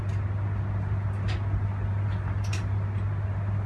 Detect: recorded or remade recorded